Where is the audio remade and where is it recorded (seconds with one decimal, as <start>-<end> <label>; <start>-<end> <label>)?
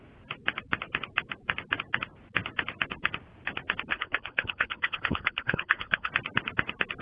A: 0.0-3.9 recorded; 3.9-6.1 remade; 6.1-7.0 recorded